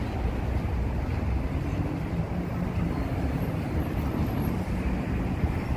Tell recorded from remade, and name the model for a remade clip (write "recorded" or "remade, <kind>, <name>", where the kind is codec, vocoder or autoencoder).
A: recorded